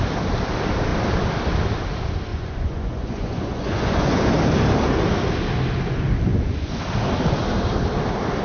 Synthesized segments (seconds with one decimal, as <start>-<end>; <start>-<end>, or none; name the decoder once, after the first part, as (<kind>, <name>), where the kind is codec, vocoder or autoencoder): 2.3-4.2 (vocoder, Vocos); 6.3-6.8